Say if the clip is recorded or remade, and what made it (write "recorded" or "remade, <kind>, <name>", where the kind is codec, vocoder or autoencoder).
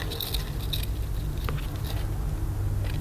recorded